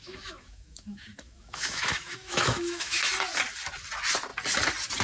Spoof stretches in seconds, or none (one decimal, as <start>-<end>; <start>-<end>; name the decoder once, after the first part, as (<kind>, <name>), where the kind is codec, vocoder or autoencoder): 0.0-3.0 (autoencoder, DAC-VAE)